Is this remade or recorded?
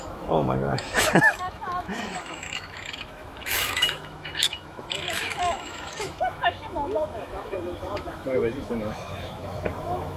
remade